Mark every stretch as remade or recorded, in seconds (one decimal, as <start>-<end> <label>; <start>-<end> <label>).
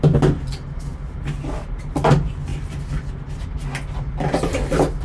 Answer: 0.0-0.9 recorded; 0.9-1.8 remade; 1.8-5.0 recorded